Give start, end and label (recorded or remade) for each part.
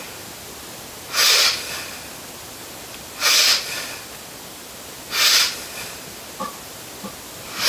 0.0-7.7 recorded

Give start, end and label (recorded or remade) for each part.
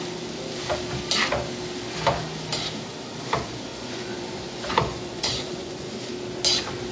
0.0-3.7 recorded; 3.7-6.1 remade; 6.1-6.9 recorded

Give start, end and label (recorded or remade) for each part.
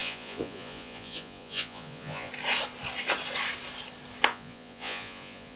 0.0-2.3 remade; 2.3-4.3 recorded; 4.3-5.6 remade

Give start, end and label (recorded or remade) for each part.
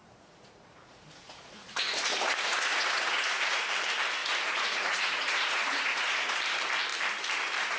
0.0-3.6 remade; 3.6-4.2 recorded; 4.2-6.4 remade; 6.4-7.8 recorded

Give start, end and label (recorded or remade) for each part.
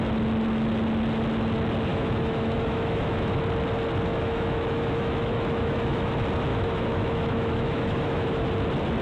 0.0-1.9 recorded; 1.9-3.3 remade; 3.3-4.1 recorded; 4.1-6.1 remade; 6.1-6.5 recorded; 6.5-8.5 remade; 8.5-9.0 recorded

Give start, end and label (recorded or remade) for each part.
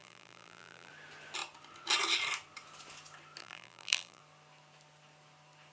0.0-0.9 remade; 0.9-3.4 recorded; 3.4-4.2 remade; 4.2-5.7 recorded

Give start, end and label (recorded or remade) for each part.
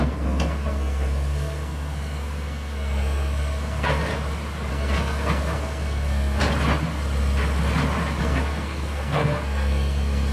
0.0-4.1 remade; 4.1-4.7 recorded; 4.7-6.4 remade; 6.4-8.2 recorded; 8.2-10.3 remade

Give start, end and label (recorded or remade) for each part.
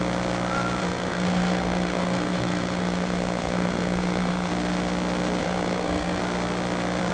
0.0-0.8 recorded; 0.8-4.5 remade; 4.5-5.4 recorded; 5.4-6.2 remade; 6.2-7.1 recorded